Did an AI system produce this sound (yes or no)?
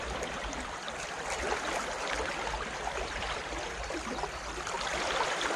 yes